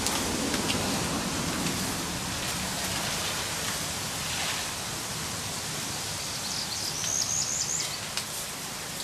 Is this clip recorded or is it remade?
recorded